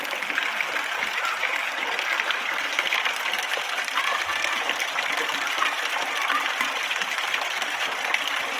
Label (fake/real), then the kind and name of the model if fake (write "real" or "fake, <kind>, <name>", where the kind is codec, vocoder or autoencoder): real